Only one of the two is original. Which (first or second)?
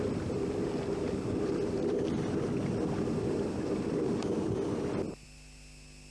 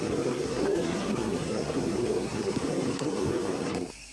first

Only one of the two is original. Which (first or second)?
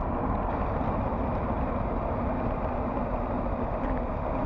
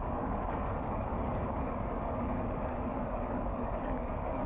first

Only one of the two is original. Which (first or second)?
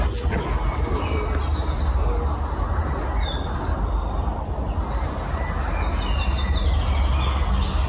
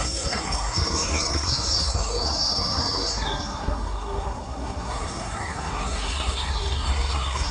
first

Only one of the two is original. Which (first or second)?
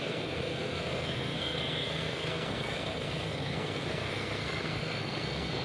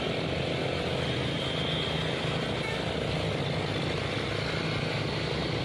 second